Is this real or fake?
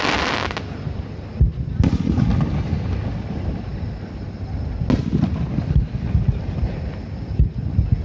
real